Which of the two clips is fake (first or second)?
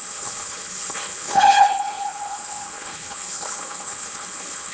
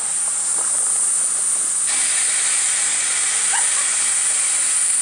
first